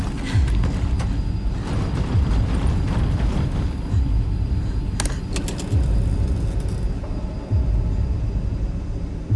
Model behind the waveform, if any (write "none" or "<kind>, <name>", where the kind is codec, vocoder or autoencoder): none